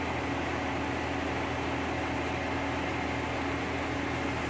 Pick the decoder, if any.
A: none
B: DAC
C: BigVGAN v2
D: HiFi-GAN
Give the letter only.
A